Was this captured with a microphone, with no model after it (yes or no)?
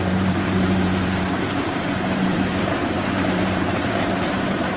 no